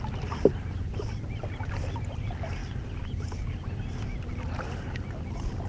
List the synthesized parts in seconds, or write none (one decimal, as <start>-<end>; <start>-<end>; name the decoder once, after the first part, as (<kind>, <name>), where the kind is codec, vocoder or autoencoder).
none